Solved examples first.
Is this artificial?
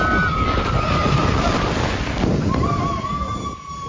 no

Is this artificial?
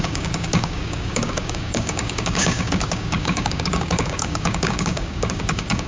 yes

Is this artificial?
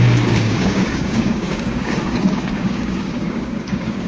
yes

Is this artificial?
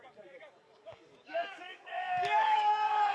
yes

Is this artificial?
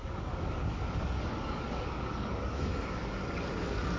yes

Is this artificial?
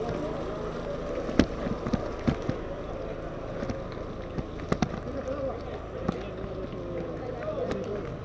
no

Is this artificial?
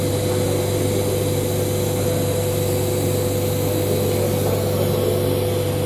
no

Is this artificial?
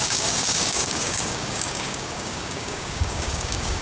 yes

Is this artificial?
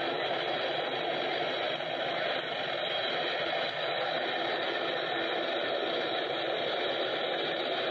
no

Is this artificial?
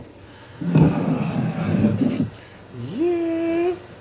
no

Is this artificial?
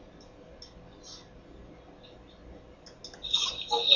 no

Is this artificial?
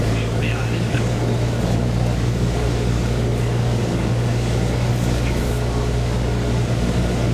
yes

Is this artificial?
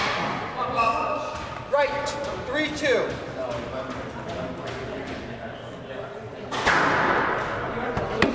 no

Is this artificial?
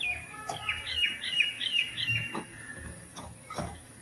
yes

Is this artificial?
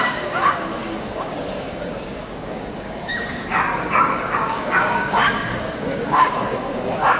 yes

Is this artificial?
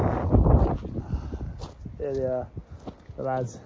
no